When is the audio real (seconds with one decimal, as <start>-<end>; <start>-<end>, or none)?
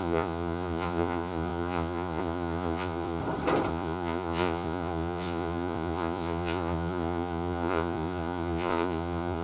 3.2-3.7